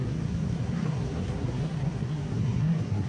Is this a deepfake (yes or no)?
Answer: yes